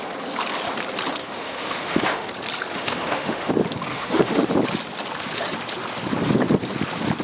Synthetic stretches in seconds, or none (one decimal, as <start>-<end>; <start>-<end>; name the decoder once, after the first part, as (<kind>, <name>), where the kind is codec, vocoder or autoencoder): 1.2-2.3 (autoencoder, DAC-VAE); 2.7-3.5; 3.9-4.5